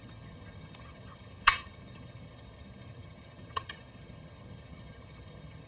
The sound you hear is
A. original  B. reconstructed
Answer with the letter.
B